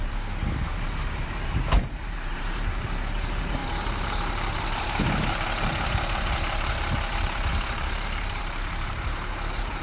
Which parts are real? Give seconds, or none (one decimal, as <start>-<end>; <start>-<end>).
none